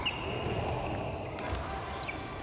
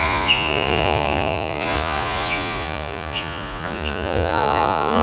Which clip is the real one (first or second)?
first